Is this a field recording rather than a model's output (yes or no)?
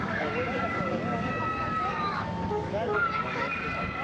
no